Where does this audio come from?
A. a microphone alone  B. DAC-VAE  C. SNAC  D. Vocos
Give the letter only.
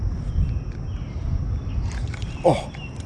A